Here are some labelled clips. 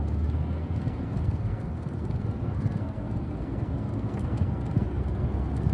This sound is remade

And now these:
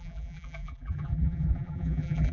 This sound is remade